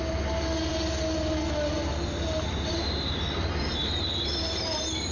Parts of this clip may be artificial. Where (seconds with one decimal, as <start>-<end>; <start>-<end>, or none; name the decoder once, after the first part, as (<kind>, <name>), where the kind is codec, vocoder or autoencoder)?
none